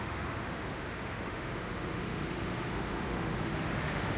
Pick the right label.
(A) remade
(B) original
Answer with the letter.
A